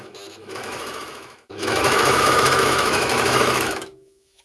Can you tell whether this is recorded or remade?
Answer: remade